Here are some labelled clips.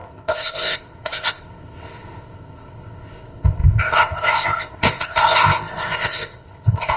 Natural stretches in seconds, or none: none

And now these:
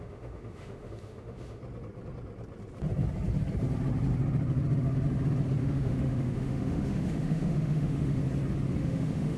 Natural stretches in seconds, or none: 1.6-5.6; 8.2-8.8

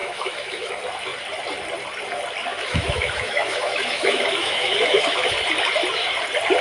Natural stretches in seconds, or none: 0.7-2.5; 5.3-6.6

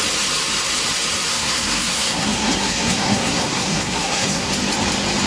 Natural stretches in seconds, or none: 0.0-1.3; 4.5-5.3

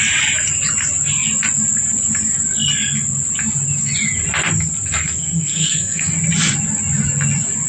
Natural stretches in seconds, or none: 0.0-4.9; 6.1-7.7

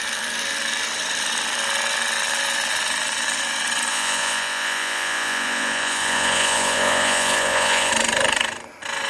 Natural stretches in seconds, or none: 0.0-3.9; 7.9-9.1

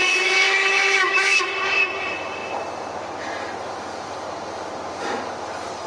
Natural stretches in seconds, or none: 1.4-5.9

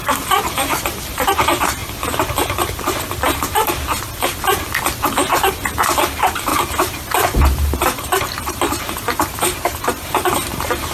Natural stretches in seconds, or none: 1.8-6.0; 6.5-7.1